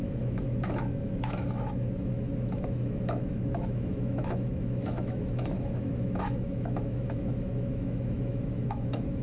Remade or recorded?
remade